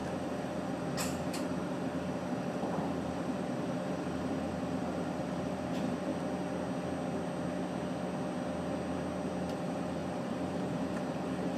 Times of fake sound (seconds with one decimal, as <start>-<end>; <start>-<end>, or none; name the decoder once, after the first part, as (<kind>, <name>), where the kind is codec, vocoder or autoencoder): 0.0-6.1 (vocoder, BigVGAN v2); 9.5-11.6